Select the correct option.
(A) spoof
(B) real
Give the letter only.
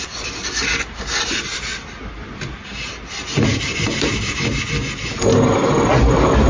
B